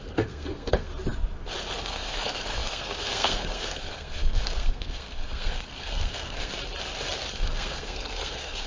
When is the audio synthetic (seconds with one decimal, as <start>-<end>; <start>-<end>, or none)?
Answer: 0.0-0.9; 1.8-6.5; 7.3-8.7